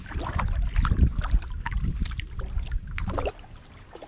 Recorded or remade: recorded